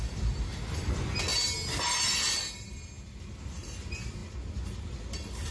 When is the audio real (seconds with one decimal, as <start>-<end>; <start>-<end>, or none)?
0.0-5.5